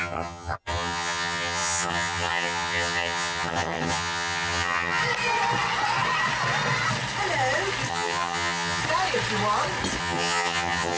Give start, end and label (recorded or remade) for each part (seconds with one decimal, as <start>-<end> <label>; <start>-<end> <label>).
0.0-5.0 remade; 5.0-7.9 recorded; 7.9-8.8 remade; 8.8-10.0 recorded; 10.0-11.0 remade